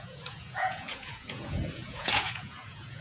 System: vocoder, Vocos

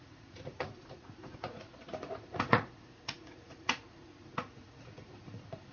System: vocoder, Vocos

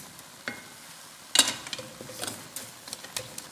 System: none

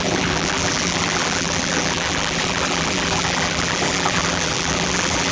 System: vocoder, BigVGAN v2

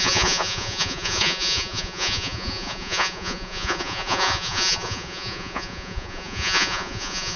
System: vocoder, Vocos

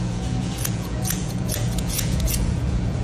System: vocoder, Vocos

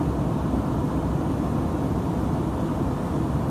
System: none